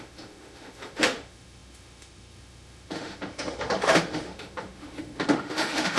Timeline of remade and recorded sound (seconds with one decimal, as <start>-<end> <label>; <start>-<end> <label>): 0.0-6.0 remade